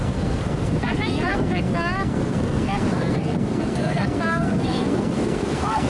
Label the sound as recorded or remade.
remade